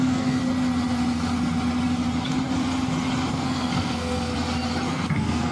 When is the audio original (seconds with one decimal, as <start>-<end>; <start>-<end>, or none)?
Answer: 0.4-3.3; 4.3-4.9